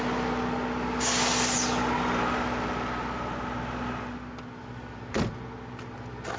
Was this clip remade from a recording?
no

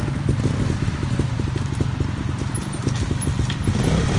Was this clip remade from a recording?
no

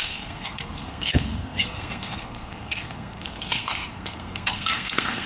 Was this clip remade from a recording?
yes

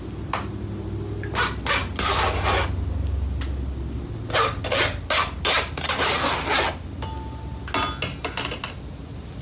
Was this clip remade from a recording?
no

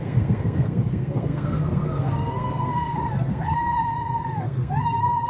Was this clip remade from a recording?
yes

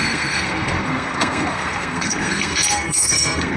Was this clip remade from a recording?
yes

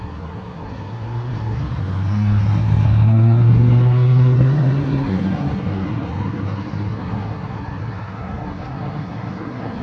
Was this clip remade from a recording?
yes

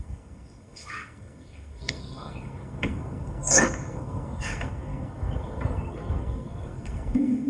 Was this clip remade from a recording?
yes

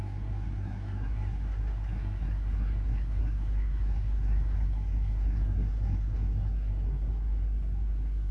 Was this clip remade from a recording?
yes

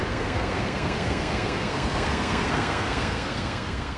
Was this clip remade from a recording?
yes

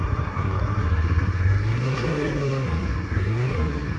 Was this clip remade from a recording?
yes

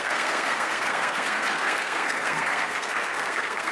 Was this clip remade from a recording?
yes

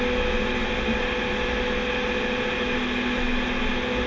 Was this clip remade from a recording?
no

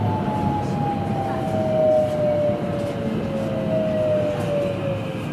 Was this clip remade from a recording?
no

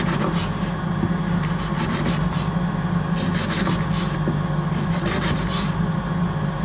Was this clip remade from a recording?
no